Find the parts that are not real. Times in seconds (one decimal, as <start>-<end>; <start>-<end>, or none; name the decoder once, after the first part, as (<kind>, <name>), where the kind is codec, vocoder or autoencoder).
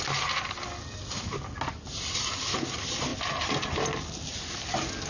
none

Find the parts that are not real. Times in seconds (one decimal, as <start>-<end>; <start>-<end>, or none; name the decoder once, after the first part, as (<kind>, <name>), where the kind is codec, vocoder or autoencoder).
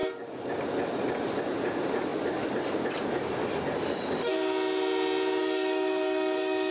5.4-6.7 (codec, DAC)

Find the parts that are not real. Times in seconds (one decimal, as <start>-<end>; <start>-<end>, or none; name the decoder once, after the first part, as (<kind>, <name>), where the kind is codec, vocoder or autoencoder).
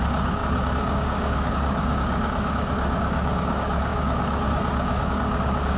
0.0-5.8 (codec, DAC)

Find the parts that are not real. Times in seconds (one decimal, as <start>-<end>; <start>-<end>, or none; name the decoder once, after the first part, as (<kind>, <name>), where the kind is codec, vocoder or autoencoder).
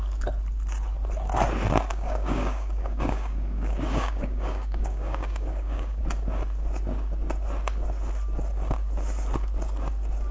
1.9-6.0 (codec, DAC)